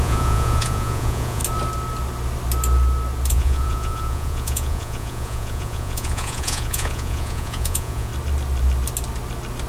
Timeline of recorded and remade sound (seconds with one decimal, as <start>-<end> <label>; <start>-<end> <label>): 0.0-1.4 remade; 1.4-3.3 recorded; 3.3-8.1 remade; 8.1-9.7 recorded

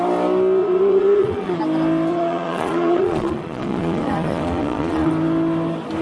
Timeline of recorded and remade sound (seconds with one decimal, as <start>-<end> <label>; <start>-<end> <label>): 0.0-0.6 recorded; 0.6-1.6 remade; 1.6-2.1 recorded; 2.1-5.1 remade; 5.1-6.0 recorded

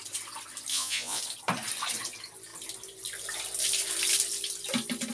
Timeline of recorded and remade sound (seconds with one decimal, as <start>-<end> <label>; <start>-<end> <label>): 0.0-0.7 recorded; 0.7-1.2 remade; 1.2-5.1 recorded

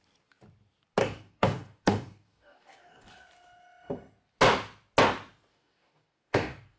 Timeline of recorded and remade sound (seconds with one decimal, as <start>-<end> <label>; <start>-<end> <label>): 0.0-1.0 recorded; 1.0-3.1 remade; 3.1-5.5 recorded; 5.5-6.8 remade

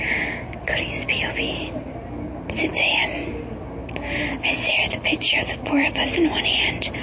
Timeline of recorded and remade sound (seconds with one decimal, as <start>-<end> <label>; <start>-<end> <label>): 0.0-7.0 recorded

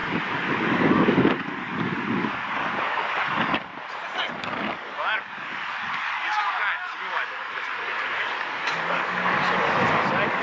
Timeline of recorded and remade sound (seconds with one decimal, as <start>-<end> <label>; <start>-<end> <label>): 0.0-3.7 remade; 3.7-4.3 recorded; 4.3-10.4 remade

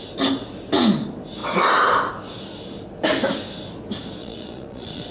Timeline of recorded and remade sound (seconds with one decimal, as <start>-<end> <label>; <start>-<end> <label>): 0.0-4.2 recorded; 4.2-5.1 remade